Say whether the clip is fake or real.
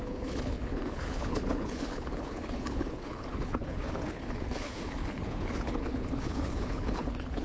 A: fake